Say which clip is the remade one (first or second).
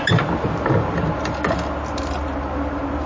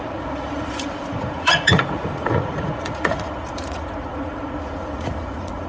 second